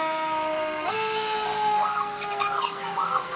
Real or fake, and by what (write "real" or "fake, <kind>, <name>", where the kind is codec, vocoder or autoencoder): fake, codec, SNAC